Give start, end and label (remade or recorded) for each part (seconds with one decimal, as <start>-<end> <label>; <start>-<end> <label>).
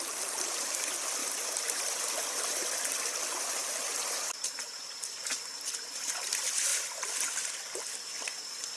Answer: 0.0-1.2 remade; 1.2-5.1 recorded; 5.1-6.7 remade; 6.7-8.2 recorded; 8.2-8.8 remade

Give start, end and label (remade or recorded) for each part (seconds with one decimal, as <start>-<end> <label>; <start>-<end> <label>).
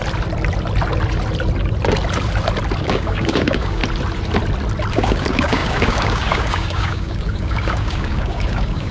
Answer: 0.0-2.8 recorded; 2.8-3.8 remade; 3.8-4.9 recorded; 4.9-8.9 remade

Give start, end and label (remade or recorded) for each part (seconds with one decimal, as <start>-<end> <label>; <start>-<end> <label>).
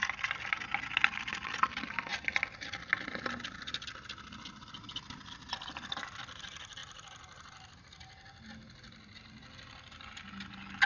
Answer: 0.0-10.8 recorded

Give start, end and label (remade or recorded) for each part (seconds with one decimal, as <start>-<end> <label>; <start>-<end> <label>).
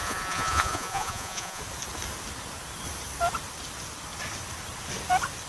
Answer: 0.0-1.6 remade; 1.6-5.5 recorded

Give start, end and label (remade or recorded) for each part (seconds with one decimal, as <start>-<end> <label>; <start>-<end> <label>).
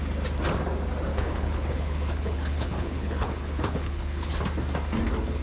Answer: 0.0-1.1 recorded; 1.1-4.3 remade; 4.3-5.4 recorded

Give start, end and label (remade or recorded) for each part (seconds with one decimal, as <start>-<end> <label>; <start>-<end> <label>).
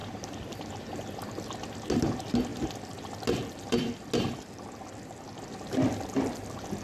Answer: 0.0-6.8 recorded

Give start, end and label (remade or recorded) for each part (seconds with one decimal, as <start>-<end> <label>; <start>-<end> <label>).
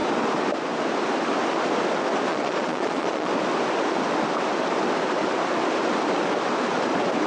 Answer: 0.0-2.3 recorded; 2.3-3.3 remade; 3.3-7.3 recorded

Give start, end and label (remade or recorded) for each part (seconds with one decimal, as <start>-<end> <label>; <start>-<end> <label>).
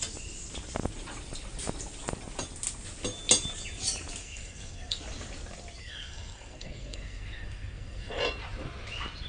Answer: 0.0-4.2 recorded; 4.2-5.0 remade; 5.0-5.8 recorded; 5.8-8.2 remade; 8.2-9.3 recorded